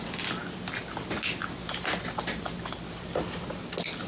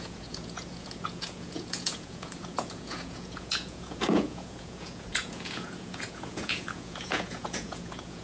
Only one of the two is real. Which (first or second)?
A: first